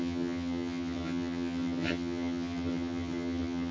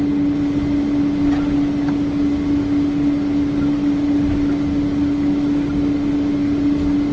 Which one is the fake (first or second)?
first